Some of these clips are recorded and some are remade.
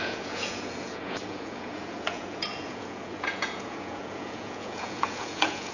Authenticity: remade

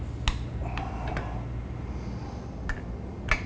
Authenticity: recorded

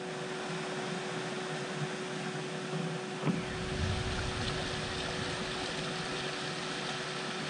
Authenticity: recorded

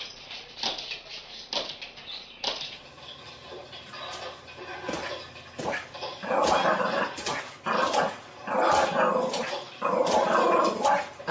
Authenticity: recorded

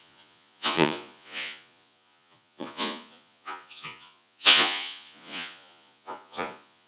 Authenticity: remade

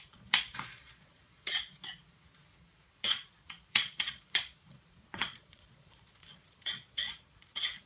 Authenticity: remade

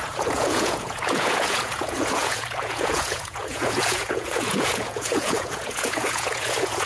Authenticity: remade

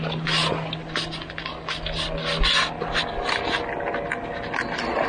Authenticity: recorded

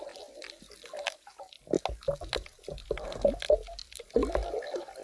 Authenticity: recorded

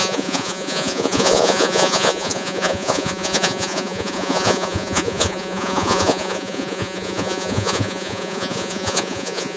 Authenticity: remade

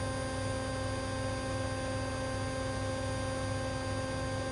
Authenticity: recorded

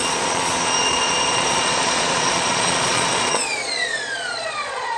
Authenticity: remade